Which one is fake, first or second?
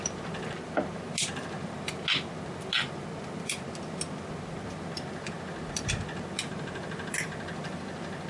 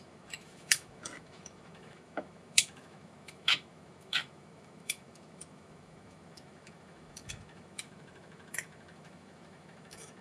second